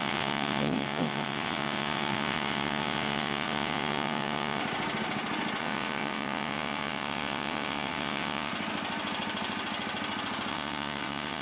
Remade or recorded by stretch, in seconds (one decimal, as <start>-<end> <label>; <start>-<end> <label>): 0.0-4.6 remade; 4.6-5.6 recorded; 5.6-8.5 remade; 8.5-10.5 recorded; 10.5-11.4 remade